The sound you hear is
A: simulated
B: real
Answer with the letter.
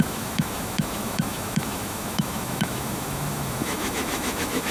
A